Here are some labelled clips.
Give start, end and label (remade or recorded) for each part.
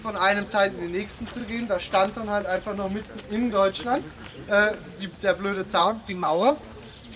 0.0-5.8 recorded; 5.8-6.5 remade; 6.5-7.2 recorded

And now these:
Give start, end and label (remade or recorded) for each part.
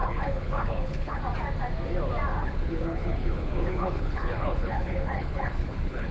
0.0-1.2 remade; 1.2-2.4 recorded; 2.4-6.1 remade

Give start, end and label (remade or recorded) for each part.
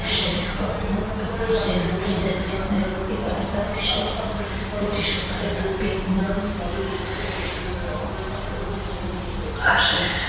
0.0-10.3 recorded